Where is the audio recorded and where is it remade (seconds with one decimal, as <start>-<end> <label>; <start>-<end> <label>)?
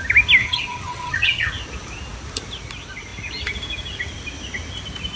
0.0-0.4 recorded; 0.4-1.5 remade; 1.5-5.2 recorded